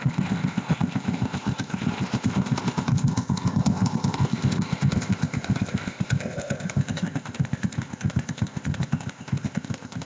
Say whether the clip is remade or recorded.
remade